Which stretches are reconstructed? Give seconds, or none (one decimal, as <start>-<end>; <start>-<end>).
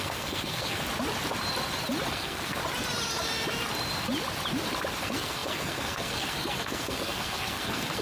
0.0-0.8; 2.1-2.6; 5.0-8.0